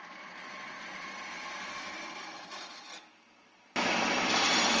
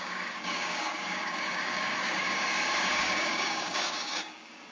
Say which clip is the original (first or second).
first